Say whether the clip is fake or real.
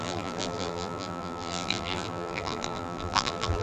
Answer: fake